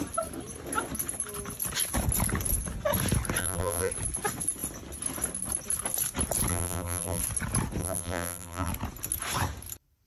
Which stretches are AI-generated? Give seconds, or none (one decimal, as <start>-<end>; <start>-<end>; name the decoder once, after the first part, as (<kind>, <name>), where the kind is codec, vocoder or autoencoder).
3.4-3.9 (vocoder, BigVGAN v2); 6.5-7.2; 7.8-8.7